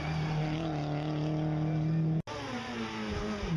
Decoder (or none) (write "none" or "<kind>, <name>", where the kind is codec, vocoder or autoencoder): none